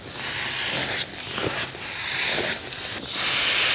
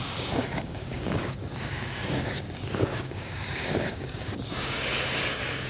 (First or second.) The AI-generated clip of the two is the second